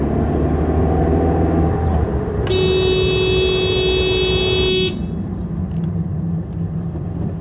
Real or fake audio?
real